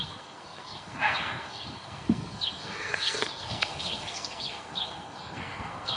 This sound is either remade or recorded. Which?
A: remade